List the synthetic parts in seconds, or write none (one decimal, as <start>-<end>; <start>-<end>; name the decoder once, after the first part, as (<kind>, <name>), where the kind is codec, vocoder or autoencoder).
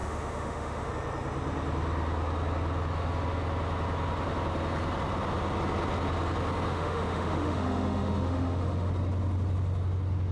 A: 0.0-0.9 (autoencoder, DAC-VAE); 6.7-8.9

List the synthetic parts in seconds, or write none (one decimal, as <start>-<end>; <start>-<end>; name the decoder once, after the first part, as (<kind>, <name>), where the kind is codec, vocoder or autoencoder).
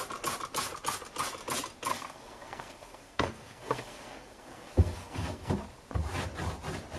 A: 1.9-5.5 (codec, SNAC)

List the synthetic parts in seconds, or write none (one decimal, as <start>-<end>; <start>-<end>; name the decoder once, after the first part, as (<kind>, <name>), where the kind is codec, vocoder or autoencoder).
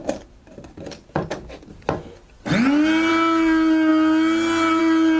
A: none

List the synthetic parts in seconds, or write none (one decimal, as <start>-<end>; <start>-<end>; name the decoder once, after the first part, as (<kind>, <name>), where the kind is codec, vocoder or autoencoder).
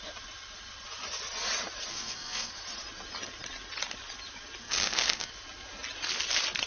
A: 1.9-2.5 (codec, SNAC); 4.6-5.3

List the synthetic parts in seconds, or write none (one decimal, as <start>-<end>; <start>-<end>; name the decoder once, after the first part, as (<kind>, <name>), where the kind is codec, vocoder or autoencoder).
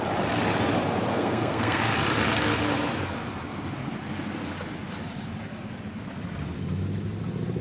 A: 1.1-1.8 (codec, SNAC)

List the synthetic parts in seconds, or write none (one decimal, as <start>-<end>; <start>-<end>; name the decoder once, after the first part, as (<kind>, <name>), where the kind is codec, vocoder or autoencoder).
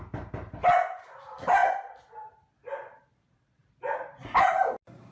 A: none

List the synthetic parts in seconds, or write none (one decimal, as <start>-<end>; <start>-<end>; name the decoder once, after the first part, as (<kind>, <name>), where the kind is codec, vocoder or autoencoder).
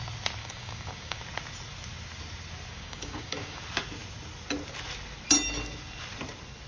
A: 0.4-1.2 (codec, DAC); 2.7-3.6